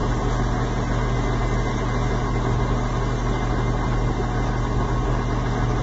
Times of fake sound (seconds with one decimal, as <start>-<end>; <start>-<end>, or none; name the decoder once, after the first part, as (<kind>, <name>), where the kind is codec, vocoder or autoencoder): none